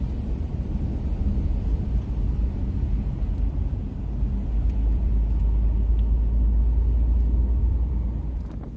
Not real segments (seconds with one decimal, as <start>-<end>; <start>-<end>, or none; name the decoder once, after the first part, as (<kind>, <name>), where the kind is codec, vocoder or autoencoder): 0.5-5.4 (vocoder, BigVGAN v2); 7.6-8.8